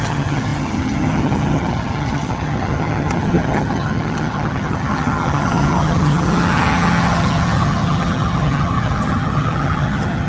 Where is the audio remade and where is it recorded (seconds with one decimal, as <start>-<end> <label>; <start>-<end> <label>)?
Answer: 0.0-10.3 remade